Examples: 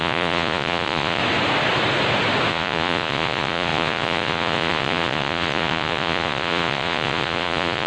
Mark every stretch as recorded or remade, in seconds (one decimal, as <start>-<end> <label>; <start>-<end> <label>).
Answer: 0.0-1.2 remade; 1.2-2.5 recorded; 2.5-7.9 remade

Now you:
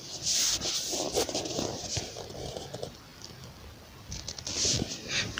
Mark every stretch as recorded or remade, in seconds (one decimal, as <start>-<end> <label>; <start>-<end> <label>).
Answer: 0.0-5.4 recorded

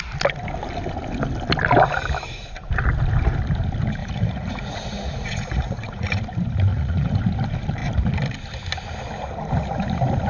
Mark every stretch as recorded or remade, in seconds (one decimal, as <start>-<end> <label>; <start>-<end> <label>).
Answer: 0.0-4.0 recorded; 4.0-6.2 remade; 6.2-6.7 recorded; 6.7-7.2 remade; 7.2-10.3 recorded

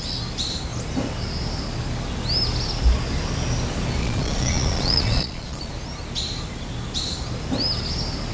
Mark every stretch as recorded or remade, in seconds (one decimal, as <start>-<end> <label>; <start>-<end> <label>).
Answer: 0.0-4.0 recorded; 4.0-5.7 remade; 5.7-8.3 recorded